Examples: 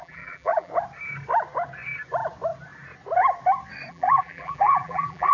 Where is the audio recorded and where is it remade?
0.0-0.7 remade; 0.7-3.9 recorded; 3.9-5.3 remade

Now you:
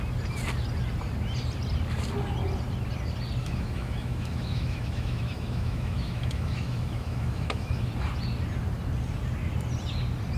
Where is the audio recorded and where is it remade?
0.0-3.4 recorded; 3.4-7.9 remade; 7.9-10.4 recorded

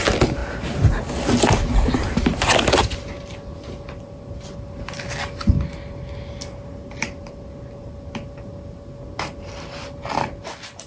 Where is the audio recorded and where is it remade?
0.0-10.9 recorded

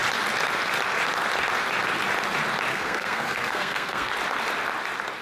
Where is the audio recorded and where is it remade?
0.0-2.7 recorded; 2.7-4.1 remade; 4.1-5.2 recorded

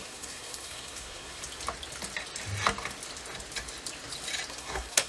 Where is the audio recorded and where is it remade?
0.0-1.4 remade; 1.4-4.5 recorded; 4.5-5.1 remade

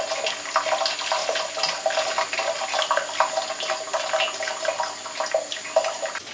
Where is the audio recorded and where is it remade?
0.0-6.3 recorded